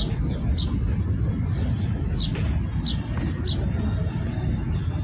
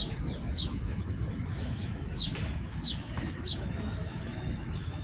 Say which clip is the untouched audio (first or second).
first